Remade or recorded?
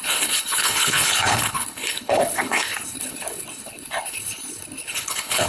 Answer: remade